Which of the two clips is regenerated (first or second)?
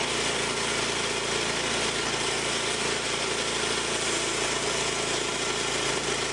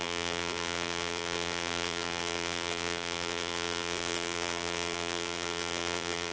second